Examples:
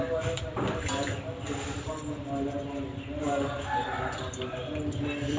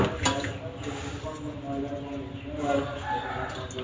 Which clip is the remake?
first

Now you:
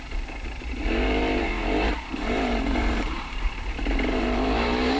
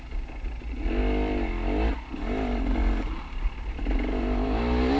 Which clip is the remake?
first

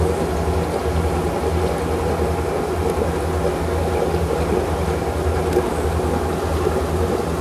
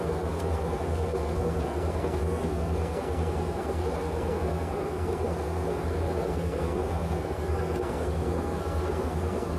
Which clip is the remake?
second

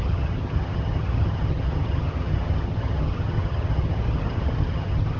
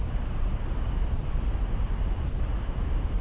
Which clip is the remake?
first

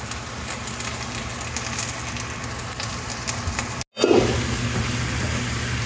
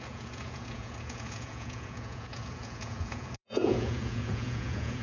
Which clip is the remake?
second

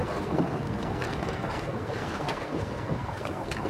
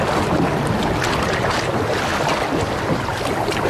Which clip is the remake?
first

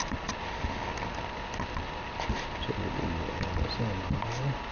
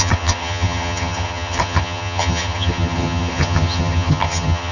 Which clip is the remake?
second